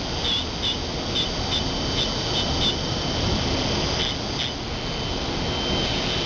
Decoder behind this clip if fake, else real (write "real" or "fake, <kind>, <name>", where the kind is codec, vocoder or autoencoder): real